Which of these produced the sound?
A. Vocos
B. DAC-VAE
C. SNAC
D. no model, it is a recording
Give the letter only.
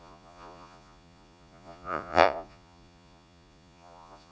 A